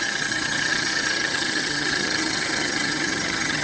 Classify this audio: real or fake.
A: fake